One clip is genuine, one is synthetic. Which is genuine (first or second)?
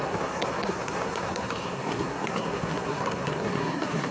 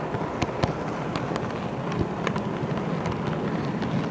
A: second